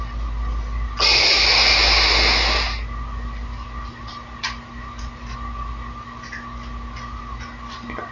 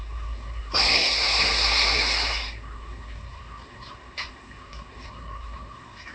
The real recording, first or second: first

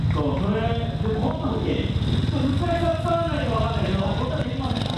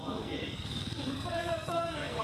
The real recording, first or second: first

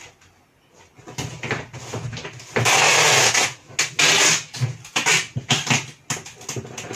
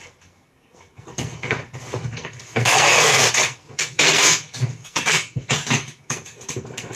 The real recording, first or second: first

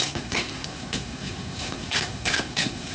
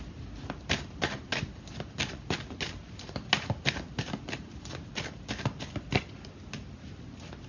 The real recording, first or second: second